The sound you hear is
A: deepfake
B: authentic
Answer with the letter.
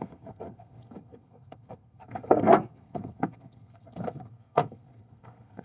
A